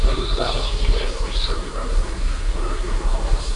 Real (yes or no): no